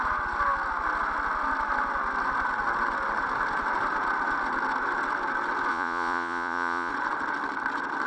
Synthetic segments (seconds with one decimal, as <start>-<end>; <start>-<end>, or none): 5.7-6.9